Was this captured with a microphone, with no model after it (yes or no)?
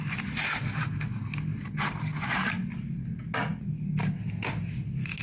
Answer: yes